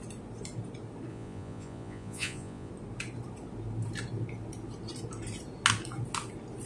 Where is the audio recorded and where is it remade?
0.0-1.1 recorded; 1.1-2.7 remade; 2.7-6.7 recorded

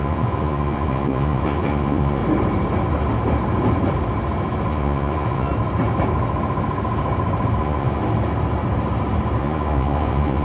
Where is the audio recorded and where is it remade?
0.0-2.2 remade; 2.2-4.7 recorded; 4.7-5.5 remade; 5.5-7.6 recorded; 7.6-8.0 remade; 8.0-9.4 recorded; 9.4-10.4 remade